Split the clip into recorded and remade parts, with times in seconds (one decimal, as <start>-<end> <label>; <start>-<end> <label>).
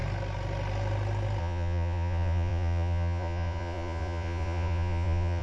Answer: 0.0-1.4 recorded; 1.4-5.4 remade